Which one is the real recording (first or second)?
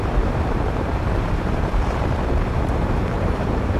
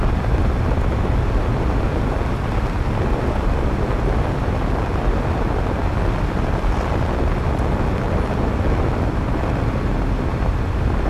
second